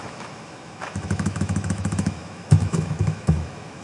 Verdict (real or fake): fake